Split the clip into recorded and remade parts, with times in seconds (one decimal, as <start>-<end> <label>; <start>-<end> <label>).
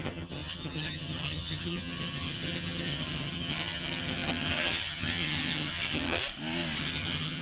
0.0-6.2 remade; 6.2-6.8 recorded; 6.8-7.4 remade